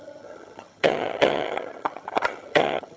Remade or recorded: remade